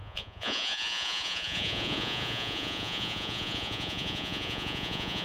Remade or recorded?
remade